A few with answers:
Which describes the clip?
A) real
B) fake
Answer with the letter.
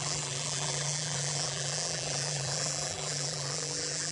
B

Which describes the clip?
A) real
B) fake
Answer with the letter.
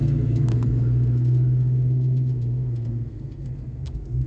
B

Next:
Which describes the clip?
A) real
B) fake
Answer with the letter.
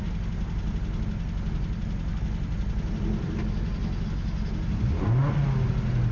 A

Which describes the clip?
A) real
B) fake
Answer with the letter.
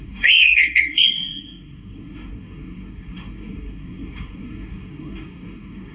B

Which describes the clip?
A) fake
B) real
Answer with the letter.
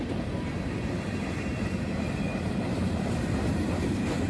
A